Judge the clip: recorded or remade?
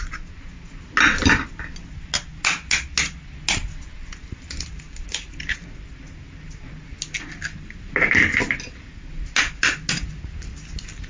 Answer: recorded